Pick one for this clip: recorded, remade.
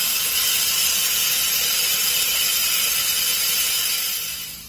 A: recorded